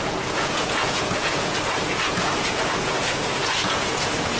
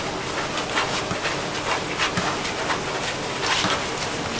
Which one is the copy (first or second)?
first